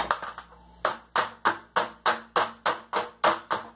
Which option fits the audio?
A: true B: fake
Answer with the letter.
A